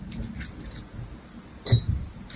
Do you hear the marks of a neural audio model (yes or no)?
no